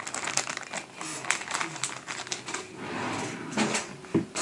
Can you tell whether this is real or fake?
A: real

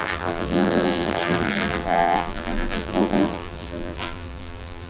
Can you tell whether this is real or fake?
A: fake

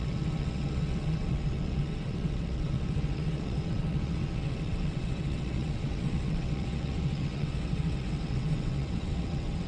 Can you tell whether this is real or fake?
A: fake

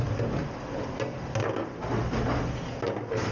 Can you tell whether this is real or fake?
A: real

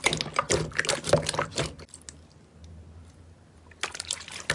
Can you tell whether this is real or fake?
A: real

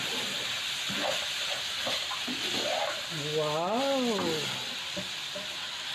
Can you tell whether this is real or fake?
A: real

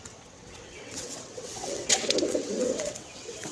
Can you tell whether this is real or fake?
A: fake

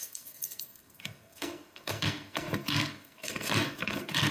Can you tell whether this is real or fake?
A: fake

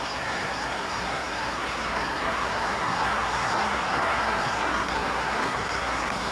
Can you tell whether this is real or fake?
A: fake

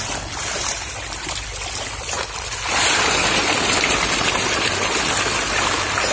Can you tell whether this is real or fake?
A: fake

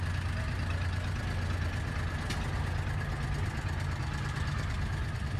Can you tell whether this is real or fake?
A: real